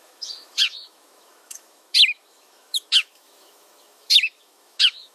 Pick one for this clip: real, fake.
fake